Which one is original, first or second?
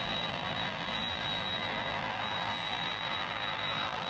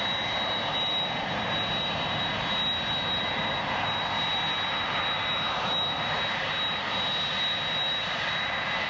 second